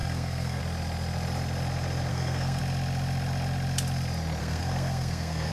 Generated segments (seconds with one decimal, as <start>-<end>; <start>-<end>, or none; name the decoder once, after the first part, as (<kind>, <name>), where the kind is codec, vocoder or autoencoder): 0.0-0.6 (codec, SNAC); 2.1-2.6; 4.4-5.5